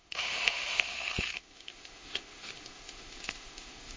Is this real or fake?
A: fake